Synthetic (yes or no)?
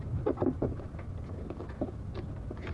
no